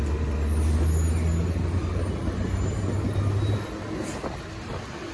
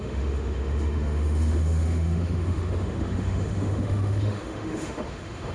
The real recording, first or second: first